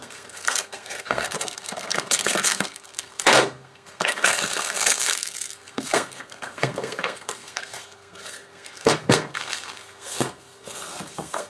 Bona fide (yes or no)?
no